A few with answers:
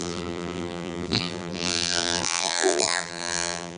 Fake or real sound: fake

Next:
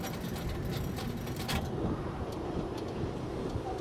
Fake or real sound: fake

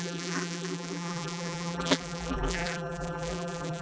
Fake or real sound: fake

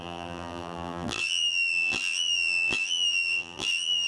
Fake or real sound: fake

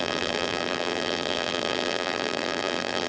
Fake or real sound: fake